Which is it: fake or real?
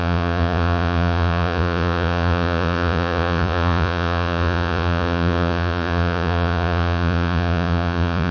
fake